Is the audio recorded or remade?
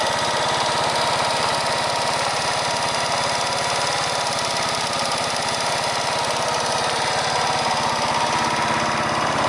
recorded